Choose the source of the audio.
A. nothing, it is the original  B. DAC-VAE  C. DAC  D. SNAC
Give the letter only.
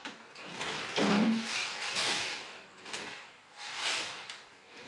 C